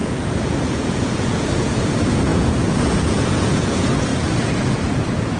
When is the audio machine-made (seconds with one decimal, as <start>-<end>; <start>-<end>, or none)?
0.0-4.1; 4.7-5.4